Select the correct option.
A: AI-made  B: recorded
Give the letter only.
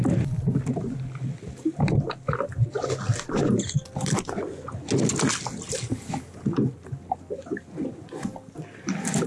B